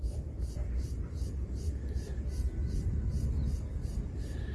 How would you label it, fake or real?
real